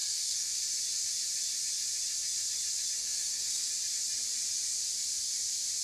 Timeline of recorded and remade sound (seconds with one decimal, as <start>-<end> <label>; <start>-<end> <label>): 0.0-0.6 remade; 0.6-3.0 recorded; 3.0-3.7 remade; 3.7-5.8 recorded